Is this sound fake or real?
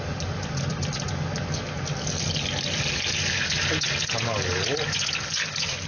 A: real